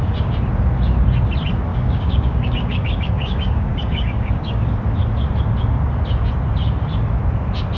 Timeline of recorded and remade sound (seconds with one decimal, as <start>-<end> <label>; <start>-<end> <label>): 0.0-1.7 recorded; 1.7-4.7 remade; 4.7-7.8 recorded